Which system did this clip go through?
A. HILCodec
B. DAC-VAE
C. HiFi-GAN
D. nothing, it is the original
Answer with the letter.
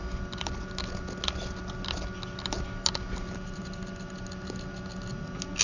D